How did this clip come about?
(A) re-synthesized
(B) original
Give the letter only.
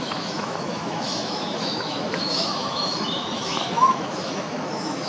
A